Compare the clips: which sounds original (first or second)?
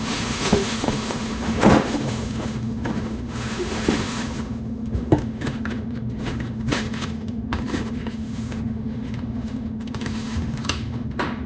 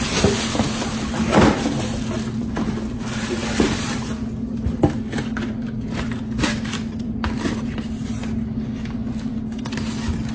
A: second